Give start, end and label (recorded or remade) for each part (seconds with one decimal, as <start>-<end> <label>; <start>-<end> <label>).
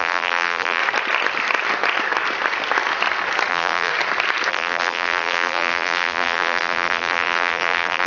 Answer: 0.0-0.8 remade; 0.8-3.5 recorded; 3.5-3.9 remade; 3.9-4.5 recorded; 4.5-8.1 remade